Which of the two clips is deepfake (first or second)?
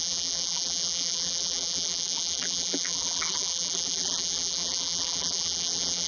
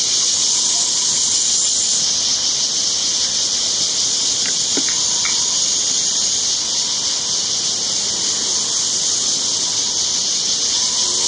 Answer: first